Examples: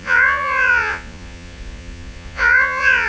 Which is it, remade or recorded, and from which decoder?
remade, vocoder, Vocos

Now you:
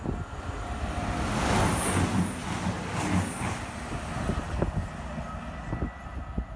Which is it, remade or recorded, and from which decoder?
recorded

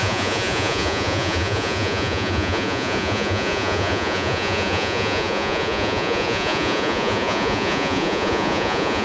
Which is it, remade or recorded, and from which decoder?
remade, vocoder, Vocos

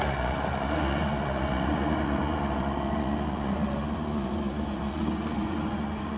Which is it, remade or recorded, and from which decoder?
remade, vocoder, Vocos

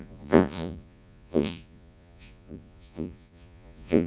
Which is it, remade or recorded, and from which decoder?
remade, vocoder, Vocos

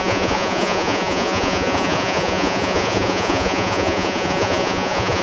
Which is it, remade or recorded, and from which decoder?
remade, vocoder, Vocos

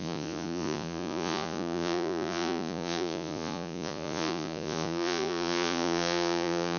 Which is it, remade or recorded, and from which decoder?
remade, vocoder, Vocos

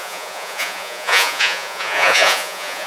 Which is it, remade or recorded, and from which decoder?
remade, vocoder, Vocos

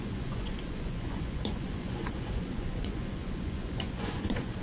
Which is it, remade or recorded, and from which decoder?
remade, vocoder, Vocos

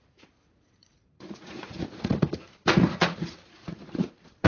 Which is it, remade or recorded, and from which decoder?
remade, vocoder, Vocos